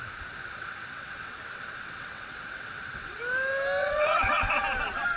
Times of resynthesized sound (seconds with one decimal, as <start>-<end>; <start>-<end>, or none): 0.4-3.2; 3.8-4.6